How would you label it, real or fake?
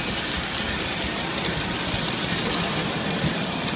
real